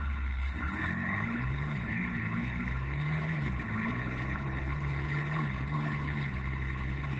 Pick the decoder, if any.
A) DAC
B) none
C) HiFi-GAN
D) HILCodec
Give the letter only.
D